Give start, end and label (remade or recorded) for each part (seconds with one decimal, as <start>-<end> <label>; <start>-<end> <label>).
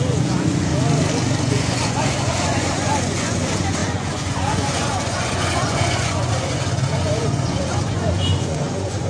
0.0-0.7 remade; 0.7-1.4 recorded; 1.4-9.1 remade